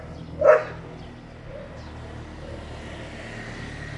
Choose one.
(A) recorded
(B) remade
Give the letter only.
A